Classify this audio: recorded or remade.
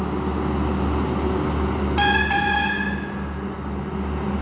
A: recorded